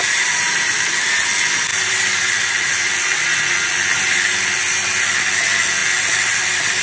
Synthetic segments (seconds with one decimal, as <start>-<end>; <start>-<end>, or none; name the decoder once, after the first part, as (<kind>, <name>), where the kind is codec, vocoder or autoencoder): 1.7-2.3 (vocoder, BigVGAN v2)